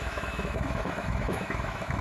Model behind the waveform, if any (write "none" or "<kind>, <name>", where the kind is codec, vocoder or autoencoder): autoencoder, DAC-VAE